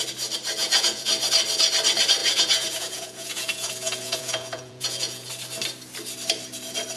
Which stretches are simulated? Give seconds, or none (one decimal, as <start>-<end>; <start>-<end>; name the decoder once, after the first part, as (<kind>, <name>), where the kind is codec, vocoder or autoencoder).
0.6-1.1 (vocoder, Vocos); 2.2-5.3